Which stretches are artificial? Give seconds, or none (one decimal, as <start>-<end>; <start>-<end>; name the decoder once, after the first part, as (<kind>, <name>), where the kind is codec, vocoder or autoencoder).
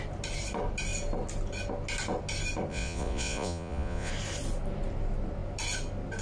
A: 2.7-4.1 (vocoder, Vocos)